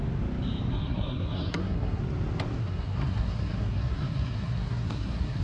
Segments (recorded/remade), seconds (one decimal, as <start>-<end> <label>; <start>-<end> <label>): 0.0-0.7 recorded; 0.7-2.0 remade; 2.0-2.6 recorded; 2.6-5.4 remade